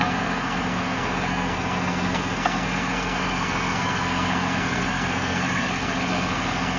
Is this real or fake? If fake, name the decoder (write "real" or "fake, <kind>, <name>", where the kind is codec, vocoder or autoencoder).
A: fake, codec, SNAC